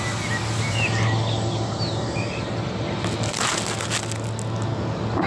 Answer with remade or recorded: recorded